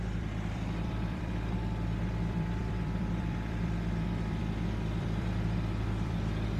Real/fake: fake